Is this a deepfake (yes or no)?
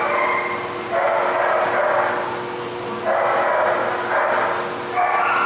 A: no